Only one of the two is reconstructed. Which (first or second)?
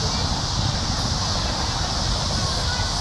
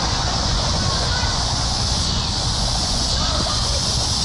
second